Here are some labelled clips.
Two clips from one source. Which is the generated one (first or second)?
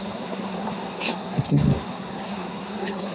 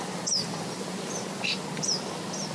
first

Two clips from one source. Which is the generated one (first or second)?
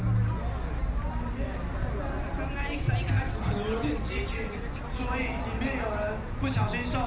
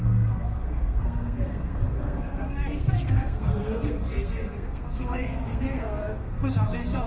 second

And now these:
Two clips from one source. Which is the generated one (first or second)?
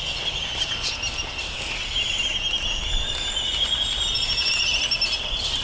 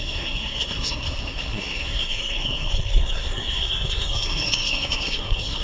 second